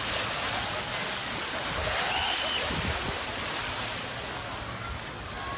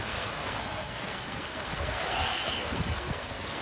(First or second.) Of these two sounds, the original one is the first